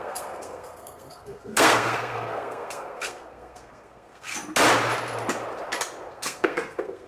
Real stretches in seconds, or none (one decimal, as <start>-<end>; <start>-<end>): 4.3-6.1